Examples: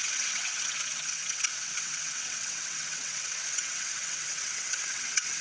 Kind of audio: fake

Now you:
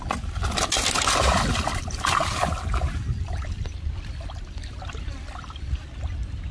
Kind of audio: real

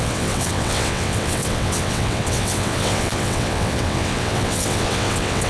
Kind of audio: fake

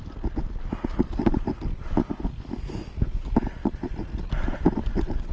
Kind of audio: real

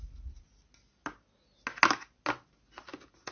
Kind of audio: real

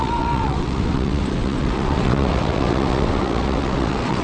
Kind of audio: fake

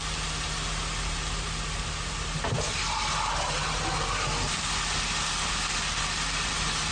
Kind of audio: real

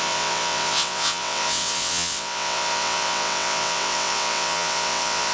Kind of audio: fake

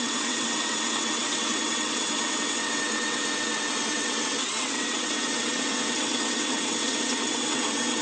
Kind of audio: fake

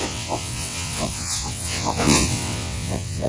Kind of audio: fake